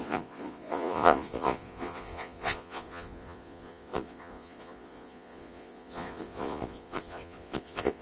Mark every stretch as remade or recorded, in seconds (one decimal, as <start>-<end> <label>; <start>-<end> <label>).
0.0-8.0 remade